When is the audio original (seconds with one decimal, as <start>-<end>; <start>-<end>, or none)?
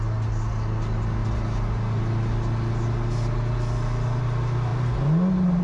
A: 0.0-5.6